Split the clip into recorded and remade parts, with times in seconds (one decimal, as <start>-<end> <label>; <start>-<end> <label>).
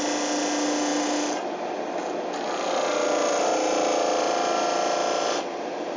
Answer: 0.0-6.0 recorded